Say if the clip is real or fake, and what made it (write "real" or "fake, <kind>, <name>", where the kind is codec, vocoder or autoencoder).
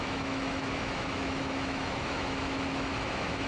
fake, autoencoder, DAC-VAE